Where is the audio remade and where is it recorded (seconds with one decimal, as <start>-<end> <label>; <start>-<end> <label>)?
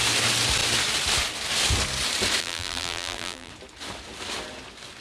0.0-2.4 recorded; 2.4-3.5 remade; 3.5-5.0 recorded